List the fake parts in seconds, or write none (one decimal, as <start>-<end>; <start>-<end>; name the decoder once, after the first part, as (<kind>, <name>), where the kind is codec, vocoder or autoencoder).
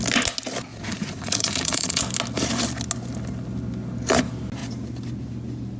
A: 0.7-2.0 (vocoder, Vocos)